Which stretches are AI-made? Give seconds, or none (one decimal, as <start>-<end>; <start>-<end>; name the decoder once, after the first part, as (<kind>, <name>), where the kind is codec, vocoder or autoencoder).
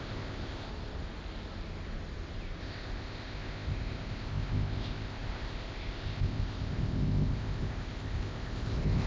0.0-0.7 (codec, ZipCodec); 2.6-9.1